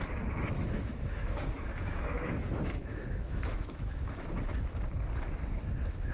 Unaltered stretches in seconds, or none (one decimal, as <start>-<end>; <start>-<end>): 0.0-0.6; 4.3-6.1